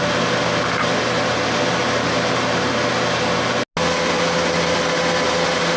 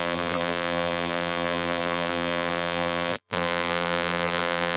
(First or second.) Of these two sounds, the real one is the first